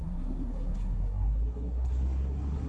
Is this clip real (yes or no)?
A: no